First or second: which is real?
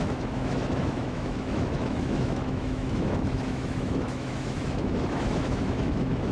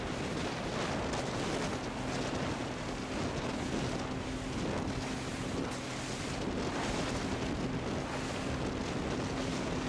second